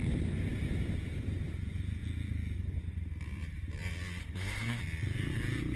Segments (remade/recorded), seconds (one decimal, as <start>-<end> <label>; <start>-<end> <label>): 0.0-4.2 recorded; 4.2-4.8 remade; 4.8-5.8 recorded